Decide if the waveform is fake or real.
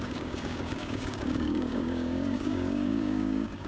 fake